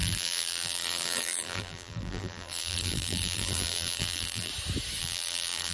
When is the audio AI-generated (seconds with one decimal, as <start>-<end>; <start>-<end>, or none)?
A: 0.0-4.5; 5.0-5.7